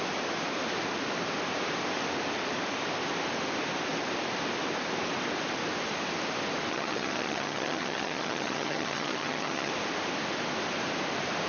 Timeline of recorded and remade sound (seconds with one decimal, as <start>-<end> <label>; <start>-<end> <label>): 0.0-6.7 recorded; 6.7-9.7 remade; 9.7-11.5 recorded